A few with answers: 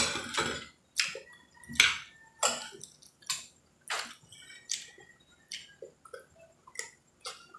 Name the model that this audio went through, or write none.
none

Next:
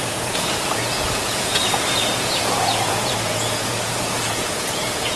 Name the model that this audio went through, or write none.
vocoder, Vocos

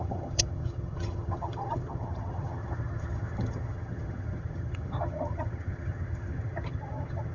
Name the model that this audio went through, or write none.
vocoder, HiFi-GAN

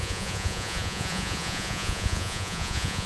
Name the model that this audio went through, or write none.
vocoder, Vocos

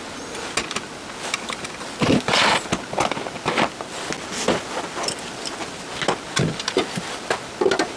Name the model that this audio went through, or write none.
none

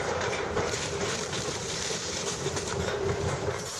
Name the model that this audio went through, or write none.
vocoder, BigVGAN v2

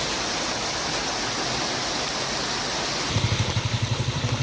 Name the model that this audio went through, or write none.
vocoder, BigVGAN v2